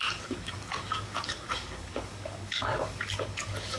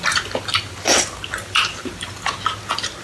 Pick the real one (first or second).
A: second